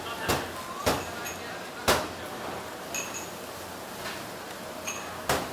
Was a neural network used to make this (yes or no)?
no